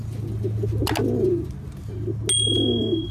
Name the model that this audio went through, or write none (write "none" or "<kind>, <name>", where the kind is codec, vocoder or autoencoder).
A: none